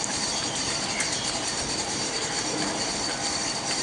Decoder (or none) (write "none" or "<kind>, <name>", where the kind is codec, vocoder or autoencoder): vocoder, BigVGAN v2